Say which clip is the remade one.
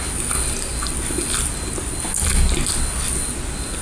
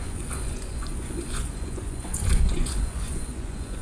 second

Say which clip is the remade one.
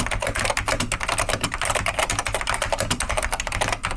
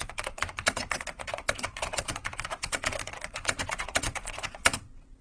second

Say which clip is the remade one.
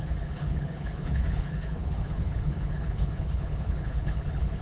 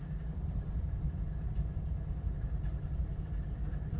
first